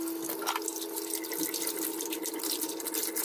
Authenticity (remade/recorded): recorded